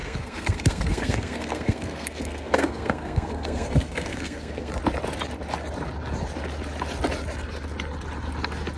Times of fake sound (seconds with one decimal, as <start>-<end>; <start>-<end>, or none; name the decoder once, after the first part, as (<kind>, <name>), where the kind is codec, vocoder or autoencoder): 0.0-4.7 (codec, SNAC)